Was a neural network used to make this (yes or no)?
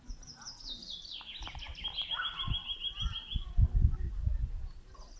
no